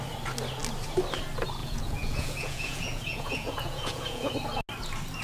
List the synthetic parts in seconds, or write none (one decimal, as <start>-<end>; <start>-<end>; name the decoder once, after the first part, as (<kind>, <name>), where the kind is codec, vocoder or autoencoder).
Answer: 1.6-4.3 (vocoder, Vocos)